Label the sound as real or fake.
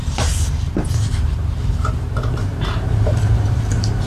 fake